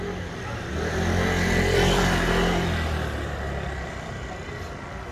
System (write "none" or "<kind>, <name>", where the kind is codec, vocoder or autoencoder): none